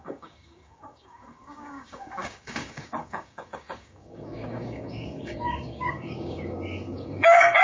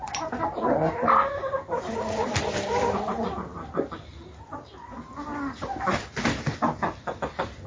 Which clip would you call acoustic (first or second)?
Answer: second